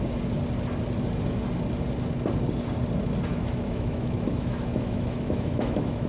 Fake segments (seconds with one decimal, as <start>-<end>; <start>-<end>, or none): 3.3-6.1